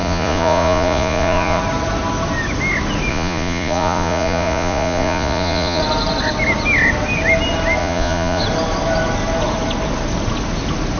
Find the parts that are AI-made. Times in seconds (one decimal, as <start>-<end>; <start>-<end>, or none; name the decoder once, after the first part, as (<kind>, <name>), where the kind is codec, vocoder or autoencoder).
0.0-1.6 (vocoder, Vocos); 3.1-5.8; 7.8-8.4